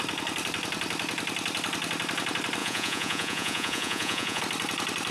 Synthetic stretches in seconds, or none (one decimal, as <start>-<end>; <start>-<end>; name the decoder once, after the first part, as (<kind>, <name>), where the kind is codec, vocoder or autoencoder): 2.6-4.4 (vocoder, Vocos)